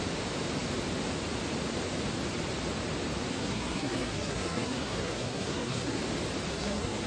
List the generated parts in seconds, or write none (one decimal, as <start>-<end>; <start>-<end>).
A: 3.3-6.0; 6.5-7.1